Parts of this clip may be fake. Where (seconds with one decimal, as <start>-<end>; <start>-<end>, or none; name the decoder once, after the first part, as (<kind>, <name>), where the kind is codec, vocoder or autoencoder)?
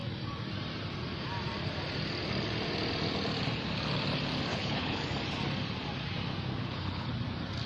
4.5-5.0 (codec, HILCodec); 6.6-7.1